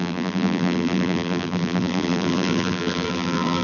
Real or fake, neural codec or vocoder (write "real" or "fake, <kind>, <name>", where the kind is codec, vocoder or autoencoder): fake, vocoder, BigVGAN v2